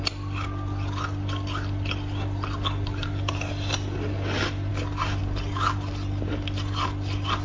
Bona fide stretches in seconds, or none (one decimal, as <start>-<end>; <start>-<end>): 0.0-7.4